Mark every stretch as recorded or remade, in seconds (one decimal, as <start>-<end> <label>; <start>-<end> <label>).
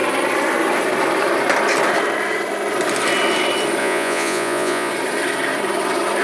0.0-3.8 recorded; 3.8-4.9 remade; 4.9-6.2 recorded